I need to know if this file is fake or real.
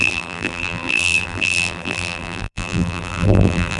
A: fake